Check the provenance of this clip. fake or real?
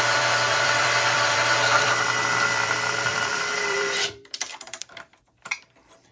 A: fake